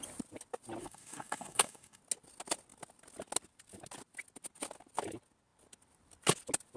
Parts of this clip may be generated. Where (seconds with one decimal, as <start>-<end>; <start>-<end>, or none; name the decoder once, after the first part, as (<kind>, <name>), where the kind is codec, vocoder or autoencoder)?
0.8-2.0 (codec, DAC)